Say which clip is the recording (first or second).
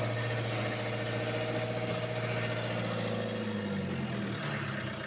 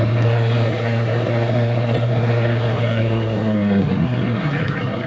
first